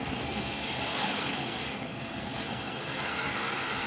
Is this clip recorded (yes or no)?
no